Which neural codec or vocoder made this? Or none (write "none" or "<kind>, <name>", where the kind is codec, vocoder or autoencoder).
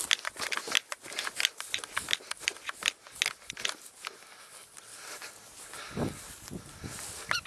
none